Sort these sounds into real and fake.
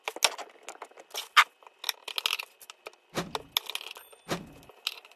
real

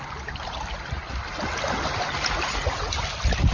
real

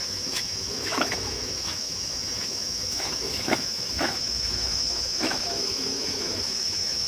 fake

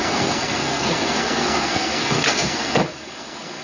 fake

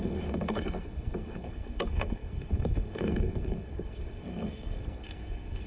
fake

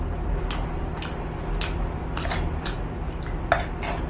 real